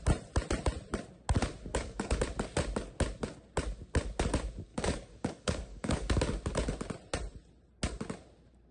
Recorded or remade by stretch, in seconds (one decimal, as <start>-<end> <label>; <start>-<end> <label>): 0.0-1.7 recorded; 1.7-2.2 remade; 2.2-4.7 recorded; 4.7-6.2 remade; 6.2-8.7 recorded